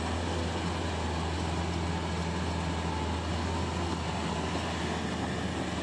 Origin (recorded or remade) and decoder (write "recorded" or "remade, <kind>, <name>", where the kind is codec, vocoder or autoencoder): recorded